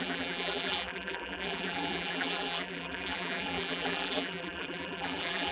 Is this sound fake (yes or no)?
yes